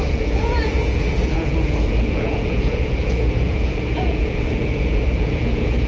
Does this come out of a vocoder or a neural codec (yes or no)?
yes